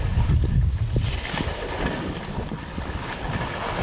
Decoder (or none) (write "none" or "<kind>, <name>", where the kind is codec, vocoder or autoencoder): none